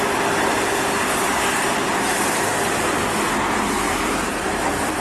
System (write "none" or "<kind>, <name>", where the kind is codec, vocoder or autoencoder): none